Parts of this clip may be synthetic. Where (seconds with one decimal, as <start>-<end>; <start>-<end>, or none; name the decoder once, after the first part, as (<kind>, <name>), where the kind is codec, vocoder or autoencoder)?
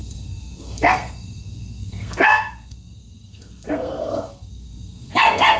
0.0-5.6 (codec, SNAC)